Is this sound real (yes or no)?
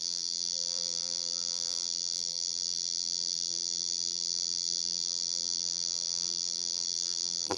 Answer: no